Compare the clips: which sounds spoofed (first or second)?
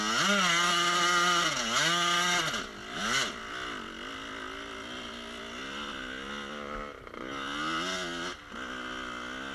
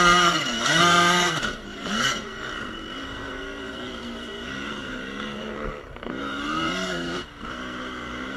second